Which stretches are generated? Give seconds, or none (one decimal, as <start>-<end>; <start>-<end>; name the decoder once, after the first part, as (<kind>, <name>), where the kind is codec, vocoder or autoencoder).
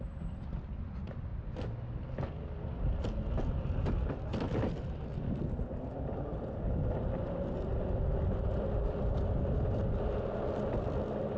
none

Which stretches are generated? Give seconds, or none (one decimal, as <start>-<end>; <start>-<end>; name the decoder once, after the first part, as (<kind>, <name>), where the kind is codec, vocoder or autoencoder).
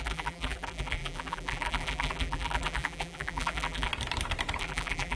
0.0-3.9 (vocoder, BigVGAN v2); 4.6-5.2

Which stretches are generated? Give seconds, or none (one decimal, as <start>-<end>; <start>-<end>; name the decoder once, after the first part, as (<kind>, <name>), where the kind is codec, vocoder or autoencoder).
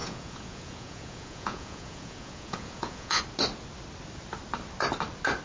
0.0-3.2 (vocoder, Vocos)